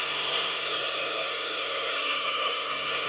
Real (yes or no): no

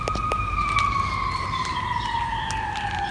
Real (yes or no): yes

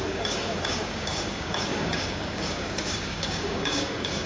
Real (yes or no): no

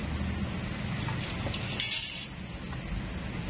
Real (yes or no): yes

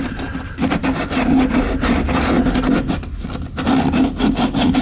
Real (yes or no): yes